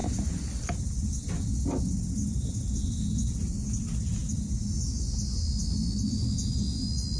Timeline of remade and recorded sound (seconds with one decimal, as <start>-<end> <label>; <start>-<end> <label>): 0.0-7.2 recorded